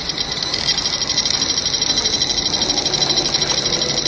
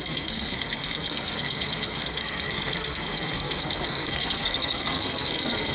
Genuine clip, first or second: first